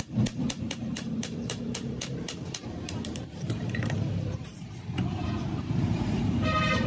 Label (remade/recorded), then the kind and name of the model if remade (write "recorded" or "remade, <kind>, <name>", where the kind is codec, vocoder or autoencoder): remade, vocoder, BigVGAN v2